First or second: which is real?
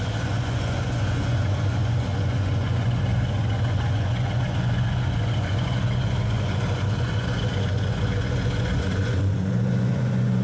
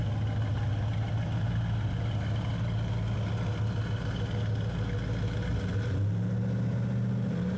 second